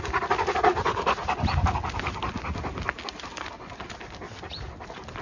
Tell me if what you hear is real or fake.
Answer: real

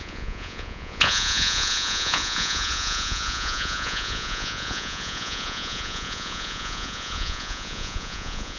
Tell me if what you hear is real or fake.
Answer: fake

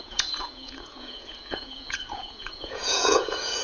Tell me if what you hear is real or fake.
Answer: fake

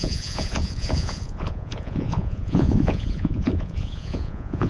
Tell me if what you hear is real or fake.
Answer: fake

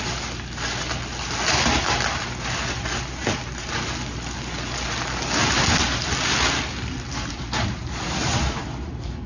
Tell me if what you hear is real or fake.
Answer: real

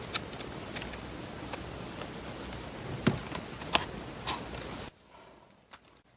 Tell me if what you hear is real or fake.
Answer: real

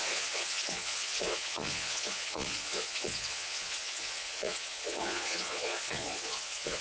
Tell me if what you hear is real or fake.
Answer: fake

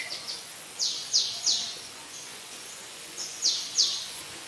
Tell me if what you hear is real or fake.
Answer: fake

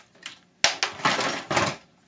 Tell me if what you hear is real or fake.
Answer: real